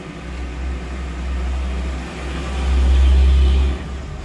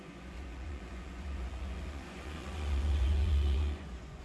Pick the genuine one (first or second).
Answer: first